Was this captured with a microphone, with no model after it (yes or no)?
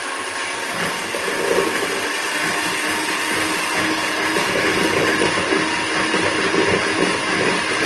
yes